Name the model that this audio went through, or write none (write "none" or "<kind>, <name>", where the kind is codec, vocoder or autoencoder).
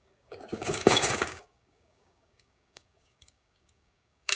codec, DAC